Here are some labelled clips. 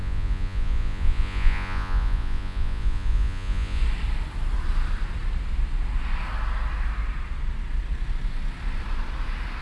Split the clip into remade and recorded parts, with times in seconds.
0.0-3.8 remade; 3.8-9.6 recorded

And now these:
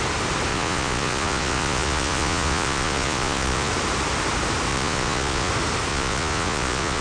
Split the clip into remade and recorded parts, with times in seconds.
0.0-0.5 recorded; 0.5-3.7 remade; 3.7-4.7 recorded; 4.7-5.5 remade; 5.5-5.9 recorded; 5.9-7.0 remade

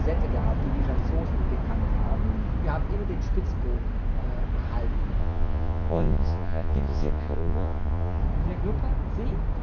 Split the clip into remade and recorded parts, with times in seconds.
0.0-5.2 recorded; 5.2-8.2 remade; 8.2-9.6 recorded

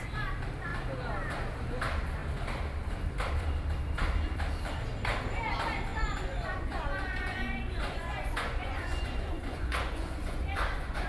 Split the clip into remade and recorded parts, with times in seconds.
0.0-5.9 recorded; 5.9-11.1 remade